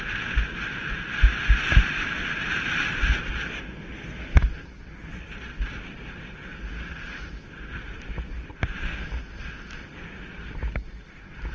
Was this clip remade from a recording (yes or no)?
no